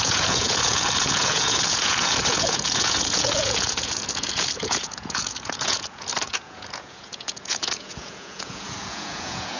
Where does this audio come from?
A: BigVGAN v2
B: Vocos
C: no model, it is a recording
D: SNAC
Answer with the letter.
B